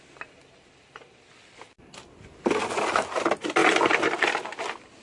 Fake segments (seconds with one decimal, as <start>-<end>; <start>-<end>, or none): none